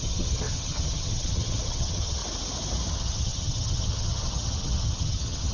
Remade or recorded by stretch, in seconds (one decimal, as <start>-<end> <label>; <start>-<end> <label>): 0.0-2.2 remade; 2.2-2.9 recorded; 2.9-5.5 remade